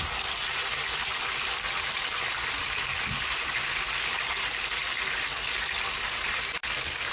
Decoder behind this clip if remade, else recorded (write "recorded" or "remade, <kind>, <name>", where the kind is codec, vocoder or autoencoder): remade, vocoder, BigVGAN v2